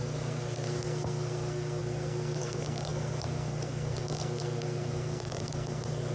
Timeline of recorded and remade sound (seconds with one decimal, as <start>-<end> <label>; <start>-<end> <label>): 0.0-6.1 remade